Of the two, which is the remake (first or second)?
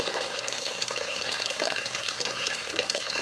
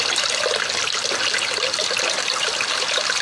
first